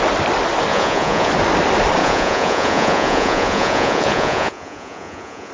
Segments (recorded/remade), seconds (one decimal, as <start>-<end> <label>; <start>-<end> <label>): 0.0-0.7 recorded; 0.7-1.3 remade; 1.3-2.0 recorded; 2.0-5.5 remade

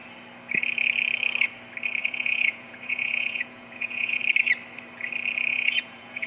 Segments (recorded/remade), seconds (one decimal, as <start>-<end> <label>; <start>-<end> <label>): 0.0-2.0 recorded; 2.0-4.2 remade; 4.2-5.5 recorded; 5.5-6.3 remade

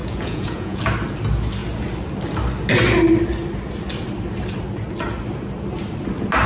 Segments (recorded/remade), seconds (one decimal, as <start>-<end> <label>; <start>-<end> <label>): 0.0-0.8 remade; 0.8-6.5 recorded